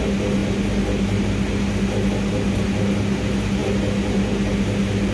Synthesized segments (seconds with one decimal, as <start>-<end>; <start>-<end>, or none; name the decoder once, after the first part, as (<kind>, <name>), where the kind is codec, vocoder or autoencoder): none